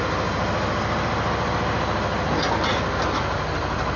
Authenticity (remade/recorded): recorded